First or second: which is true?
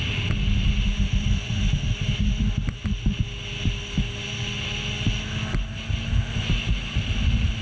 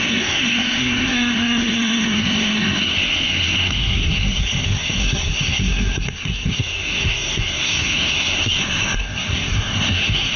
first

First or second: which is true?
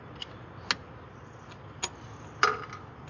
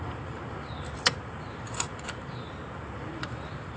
first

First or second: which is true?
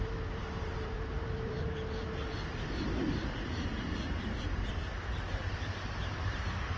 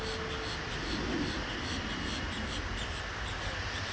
second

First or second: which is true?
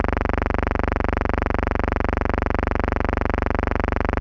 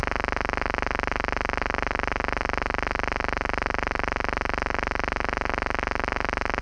first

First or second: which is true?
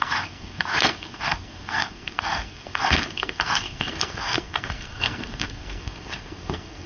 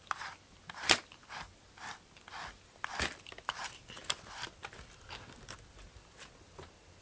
second